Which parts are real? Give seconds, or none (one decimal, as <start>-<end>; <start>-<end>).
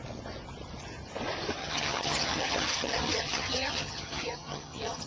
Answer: 0.0-1.6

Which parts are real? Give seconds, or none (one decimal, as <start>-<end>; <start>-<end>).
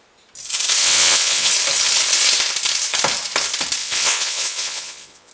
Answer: 0.0-0.8; 1.5-3.8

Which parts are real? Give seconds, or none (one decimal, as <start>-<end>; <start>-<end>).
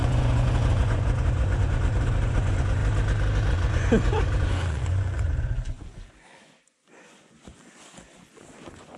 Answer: 2.8-3.5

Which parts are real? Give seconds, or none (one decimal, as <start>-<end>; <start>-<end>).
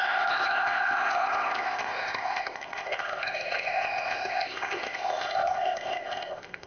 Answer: none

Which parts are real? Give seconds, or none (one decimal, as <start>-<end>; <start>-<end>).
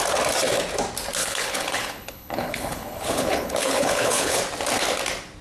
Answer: 0.0-1.2; 4.4-5.4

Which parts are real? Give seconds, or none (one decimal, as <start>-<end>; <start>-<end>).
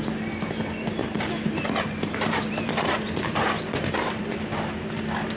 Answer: 0.0-1.0; 4.2-5.4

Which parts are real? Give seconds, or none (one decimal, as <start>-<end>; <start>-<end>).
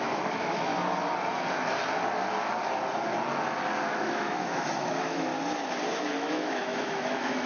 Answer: 0.7-3.9; 5.3-6.0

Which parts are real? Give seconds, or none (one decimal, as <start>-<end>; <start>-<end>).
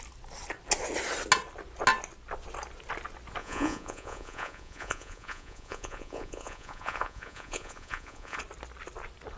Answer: 0.0-3.4; 8.4-9.4